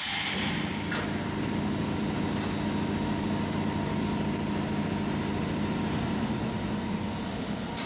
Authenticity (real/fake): real